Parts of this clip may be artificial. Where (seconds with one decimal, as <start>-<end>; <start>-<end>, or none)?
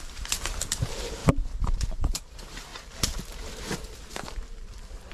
0.0-2.7; 4.1-5.1